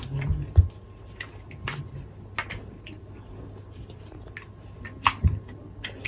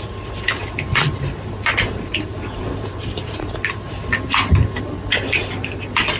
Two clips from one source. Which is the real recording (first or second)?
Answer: first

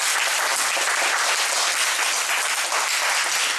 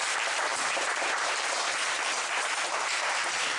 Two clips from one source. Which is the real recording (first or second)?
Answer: first